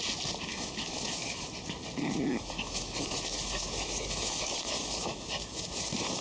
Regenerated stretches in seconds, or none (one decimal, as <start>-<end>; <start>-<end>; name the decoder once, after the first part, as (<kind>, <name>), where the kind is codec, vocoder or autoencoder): 0.5-1.5 (autoencoder, DAC-VAE); 2.3-6.2